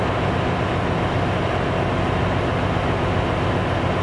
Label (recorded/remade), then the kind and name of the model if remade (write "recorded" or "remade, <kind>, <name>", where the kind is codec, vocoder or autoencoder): recorded